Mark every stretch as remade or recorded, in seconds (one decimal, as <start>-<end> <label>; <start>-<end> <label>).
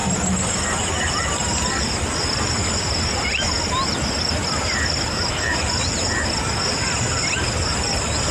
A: 0.0-1.0 remade; 1.0-4.4 recorded; 4.4-5.1 remade; 5.1-8.3 recorded